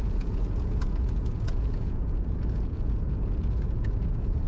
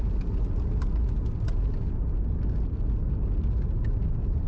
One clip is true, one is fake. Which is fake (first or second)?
first